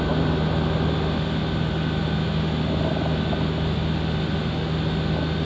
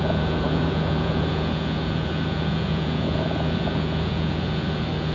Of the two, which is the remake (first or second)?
second